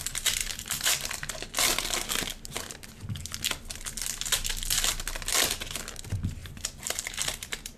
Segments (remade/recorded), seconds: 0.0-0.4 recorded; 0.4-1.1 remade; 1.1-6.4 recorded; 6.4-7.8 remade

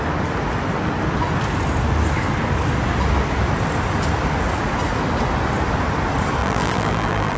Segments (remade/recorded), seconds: 0.0-6.4 recorded; 6.4-7.4 remade